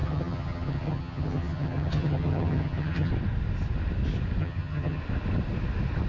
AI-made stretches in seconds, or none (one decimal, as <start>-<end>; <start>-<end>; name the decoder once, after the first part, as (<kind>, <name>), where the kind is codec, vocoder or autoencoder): 0.0-3.1 (vocoder, HiFi-GAN); 4.4-5.0